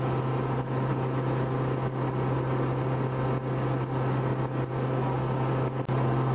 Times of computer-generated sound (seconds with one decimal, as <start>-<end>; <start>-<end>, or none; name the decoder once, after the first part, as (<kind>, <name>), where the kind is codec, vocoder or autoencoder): none